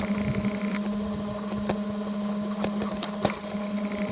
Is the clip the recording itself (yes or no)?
yes